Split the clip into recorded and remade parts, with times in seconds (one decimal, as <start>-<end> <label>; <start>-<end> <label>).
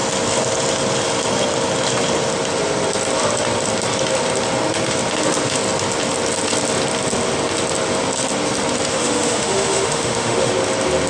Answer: 0.0-8.9 recorded; 8.9-10.5 remade; 10.5-11.1 recorded